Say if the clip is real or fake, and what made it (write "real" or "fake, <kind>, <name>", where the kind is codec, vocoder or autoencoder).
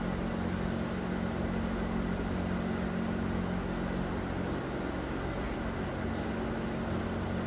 real